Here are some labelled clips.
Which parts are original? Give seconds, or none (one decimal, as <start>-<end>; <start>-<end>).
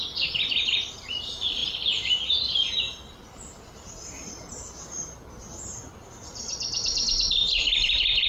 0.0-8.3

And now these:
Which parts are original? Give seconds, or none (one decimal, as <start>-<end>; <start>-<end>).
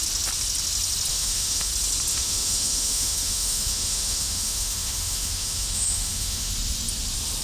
0.0-1.1; 1.7-2.1; 6.5-7.4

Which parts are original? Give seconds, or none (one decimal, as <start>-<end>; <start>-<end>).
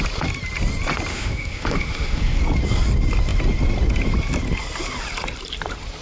0.0-1.1; 2.4-6.0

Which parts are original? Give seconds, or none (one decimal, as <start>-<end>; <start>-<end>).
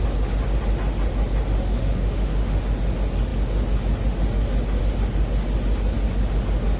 0.0-1.5; 2.6-6.8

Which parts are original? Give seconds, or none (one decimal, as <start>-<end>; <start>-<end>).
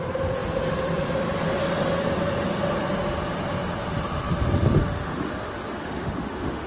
0.0-4.8; 5.3-5.8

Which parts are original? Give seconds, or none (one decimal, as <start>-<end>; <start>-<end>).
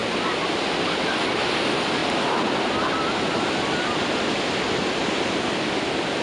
0.0-6.2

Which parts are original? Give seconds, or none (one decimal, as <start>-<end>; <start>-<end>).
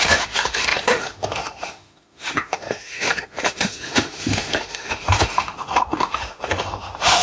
none